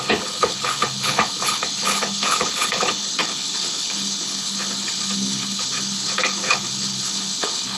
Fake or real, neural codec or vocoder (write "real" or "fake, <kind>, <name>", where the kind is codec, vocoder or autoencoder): fake, codec, HILCodec